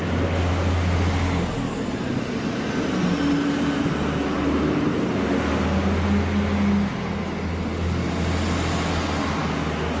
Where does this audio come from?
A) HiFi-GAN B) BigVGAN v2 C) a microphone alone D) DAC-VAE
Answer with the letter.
C